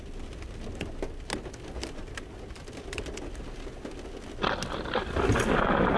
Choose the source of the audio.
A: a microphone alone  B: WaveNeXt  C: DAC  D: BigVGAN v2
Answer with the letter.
A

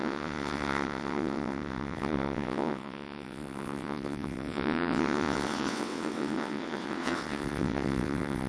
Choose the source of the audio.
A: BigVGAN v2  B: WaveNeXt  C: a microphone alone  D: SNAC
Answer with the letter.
B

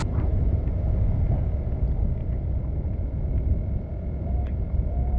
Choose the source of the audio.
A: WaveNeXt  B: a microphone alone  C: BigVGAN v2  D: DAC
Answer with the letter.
B